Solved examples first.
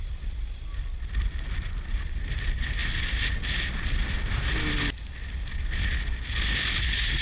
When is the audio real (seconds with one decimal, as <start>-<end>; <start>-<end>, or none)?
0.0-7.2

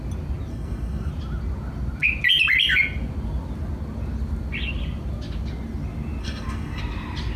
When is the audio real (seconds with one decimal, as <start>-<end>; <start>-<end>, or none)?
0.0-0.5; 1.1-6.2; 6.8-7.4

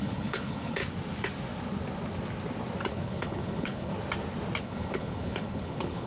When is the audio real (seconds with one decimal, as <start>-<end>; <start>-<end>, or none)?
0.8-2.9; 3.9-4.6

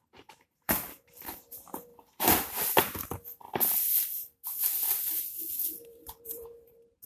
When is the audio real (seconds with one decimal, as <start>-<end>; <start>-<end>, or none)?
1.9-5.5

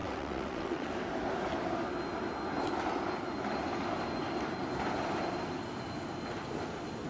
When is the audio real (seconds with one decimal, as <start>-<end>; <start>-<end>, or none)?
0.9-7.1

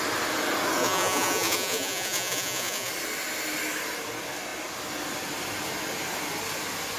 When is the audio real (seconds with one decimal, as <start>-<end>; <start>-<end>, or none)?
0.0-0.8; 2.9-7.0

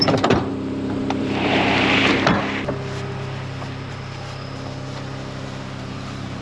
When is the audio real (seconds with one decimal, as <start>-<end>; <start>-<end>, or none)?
2.0-5.8

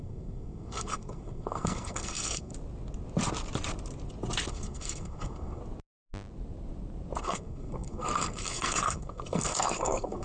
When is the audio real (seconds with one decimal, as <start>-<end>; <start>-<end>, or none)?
2.5-4.5; 5.6-7.2